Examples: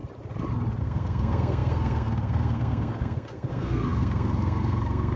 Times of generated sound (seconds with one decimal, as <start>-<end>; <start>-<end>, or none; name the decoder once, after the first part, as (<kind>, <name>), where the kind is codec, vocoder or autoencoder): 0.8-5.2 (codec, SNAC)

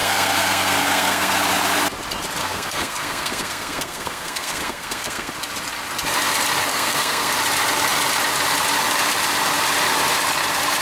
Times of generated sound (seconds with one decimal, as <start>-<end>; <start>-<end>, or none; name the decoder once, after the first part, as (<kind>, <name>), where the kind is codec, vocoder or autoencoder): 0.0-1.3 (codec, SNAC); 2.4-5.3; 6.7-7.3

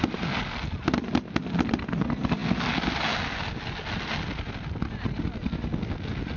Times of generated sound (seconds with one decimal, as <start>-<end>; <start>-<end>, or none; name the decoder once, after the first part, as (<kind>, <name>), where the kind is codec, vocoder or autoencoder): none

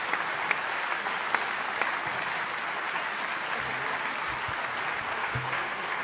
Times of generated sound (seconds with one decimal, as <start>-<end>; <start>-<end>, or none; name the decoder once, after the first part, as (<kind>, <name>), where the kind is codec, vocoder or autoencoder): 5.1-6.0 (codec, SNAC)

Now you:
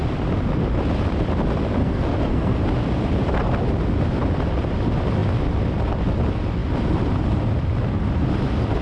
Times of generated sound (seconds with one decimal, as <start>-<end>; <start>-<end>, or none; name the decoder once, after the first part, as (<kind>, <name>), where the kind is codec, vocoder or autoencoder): 1.8-2.6 (codec, SNAC)

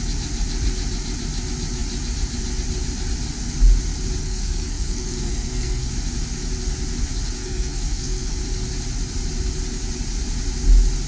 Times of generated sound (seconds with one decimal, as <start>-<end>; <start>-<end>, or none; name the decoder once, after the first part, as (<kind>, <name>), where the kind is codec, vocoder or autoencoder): 4.2-5.9 (codec, SNAC); 7.4-8.4